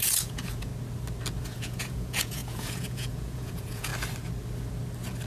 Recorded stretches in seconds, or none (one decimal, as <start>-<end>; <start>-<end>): 0.7-1.4; 3.9-5.3